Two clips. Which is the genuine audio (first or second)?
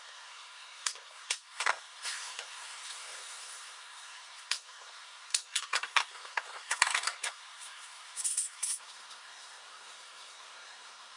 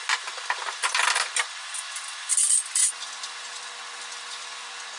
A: second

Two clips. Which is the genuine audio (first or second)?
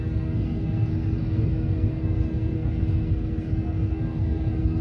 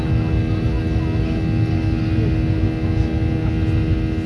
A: second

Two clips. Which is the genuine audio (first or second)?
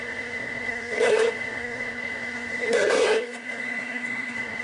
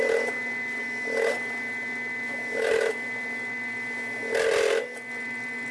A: second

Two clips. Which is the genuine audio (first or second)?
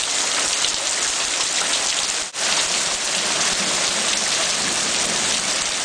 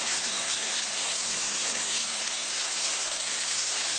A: first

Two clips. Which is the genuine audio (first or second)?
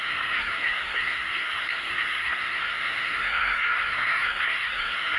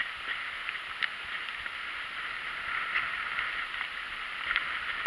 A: second